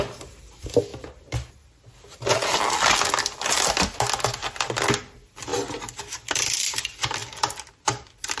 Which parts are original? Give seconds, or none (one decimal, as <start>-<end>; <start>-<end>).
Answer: 0.0-7.2